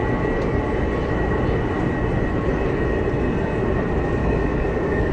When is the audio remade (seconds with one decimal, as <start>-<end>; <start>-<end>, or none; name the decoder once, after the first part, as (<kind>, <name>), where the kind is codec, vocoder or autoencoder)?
4.2-5.1 (codec, DAC)